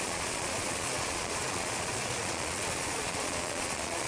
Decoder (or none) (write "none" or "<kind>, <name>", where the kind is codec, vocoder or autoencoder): vocoder, Vocos